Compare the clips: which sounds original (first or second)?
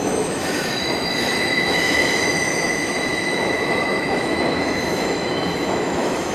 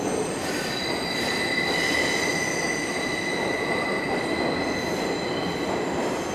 second